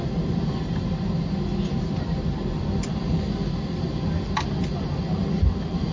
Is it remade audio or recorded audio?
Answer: recorded